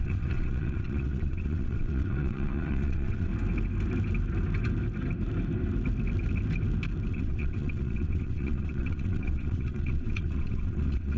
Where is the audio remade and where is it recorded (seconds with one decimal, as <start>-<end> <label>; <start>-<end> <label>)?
0.0-3.3 remade; 3.3-7.1 recorded; 7.1-11.2 remade